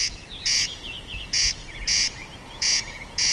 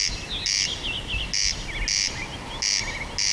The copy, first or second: first